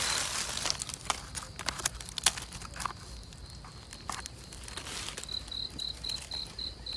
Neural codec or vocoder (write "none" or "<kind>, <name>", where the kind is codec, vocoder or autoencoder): none